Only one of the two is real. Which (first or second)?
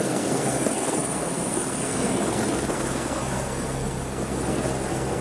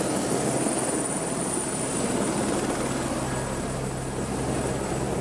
second